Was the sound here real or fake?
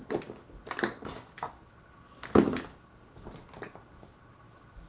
real